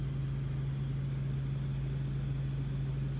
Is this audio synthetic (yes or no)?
no